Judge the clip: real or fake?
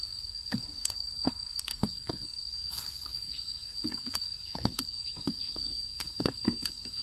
fake